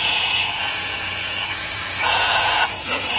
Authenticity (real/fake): fake